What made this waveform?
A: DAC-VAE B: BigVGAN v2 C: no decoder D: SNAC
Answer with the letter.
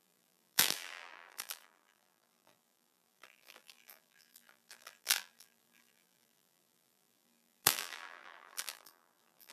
B